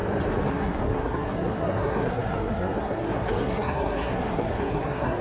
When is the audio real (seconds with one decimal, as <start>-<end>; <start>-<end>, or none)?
0.0-0.5